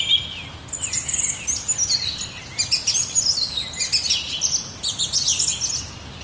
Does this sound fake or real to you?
real